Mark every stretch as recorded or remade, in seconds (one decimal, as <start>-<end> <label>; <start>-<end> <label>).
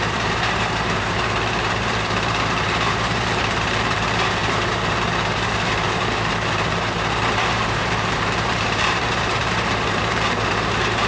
0.0-11.1 remade